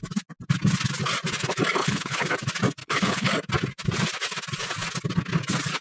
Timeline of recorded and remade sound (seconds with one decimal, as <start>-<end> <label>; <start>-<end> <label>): 0.0-1.8 recorded; 1.8-2.3 remade; 2.3-2.8 recorded; 2.8-3.3 remade; 3.3-5.8 recorded